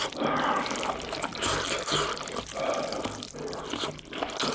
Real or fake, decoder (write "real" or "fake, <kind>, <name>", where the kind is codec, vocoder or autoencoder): real